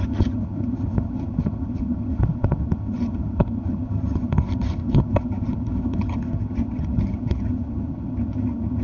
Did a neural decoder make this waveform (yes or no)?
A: yes